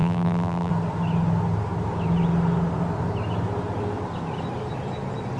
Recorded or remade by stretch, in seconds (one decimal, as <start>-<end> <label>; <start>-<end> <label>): 0.0-0.7 remade; 0.7-5.4 recorded